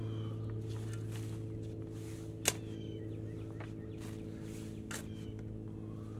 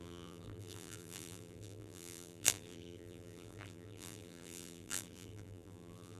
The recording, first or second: first